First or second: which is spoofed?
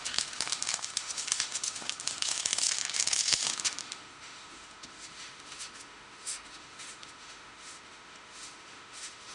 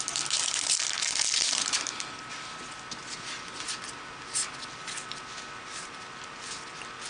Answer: first